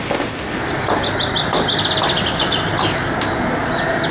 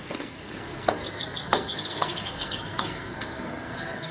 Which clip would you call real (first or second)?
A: first